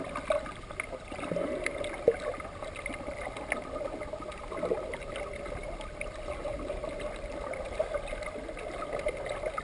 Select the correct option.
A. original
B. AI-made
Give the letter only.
A